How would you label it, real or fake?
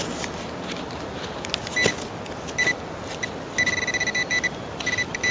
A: real